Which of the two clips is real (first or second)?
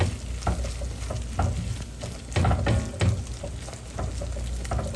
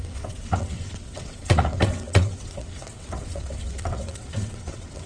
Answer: first